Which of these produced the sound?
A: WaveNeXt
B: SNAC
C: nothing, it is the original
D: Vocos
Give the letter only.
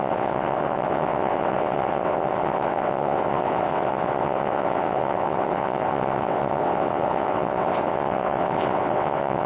A